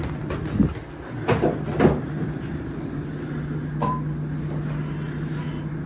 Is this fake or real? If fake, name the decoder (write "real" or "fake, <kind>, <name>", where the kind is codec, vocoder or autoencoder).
real